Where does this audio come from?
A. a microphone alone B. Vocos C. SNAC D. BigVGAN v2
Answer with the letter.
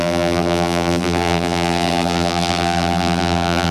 D